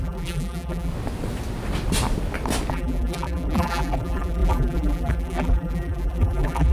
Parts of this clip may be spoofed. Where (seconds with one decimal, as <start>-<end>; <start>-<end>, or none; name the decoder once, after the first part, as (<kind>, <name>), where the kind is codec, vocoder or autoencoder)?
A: 0.0-0.9 (vocoder, BigVGAN v2); 2.7-6.7